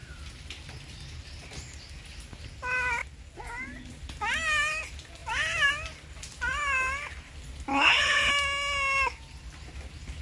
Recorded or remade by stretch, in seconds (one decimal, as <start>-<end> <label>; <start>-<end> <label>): 0.0-7.7 recorded; 7.7-8.3 remade; 8.3-10.2 recorded